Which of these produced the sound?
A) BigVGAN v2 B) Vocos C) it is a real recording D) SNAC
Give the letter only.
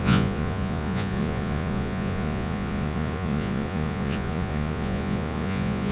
B